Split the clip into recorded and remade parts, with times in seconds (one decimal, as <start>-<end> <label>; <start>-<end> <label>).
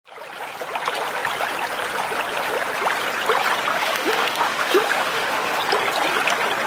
0.0-3.7 recorded; 3.7-5.6 remade; 5.6-6.7 recorded